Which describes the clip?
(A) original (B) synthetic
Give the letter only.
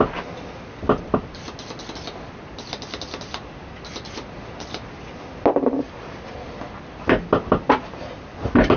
A